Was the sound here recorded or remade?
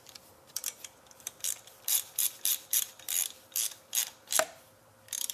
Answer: remade